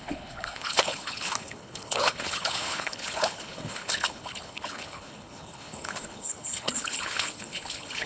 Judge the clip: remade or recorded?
remade